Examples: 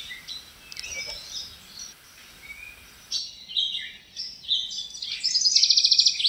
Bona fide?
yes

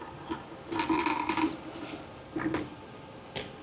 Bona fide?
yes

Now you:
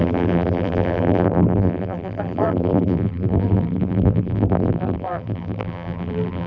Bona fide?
no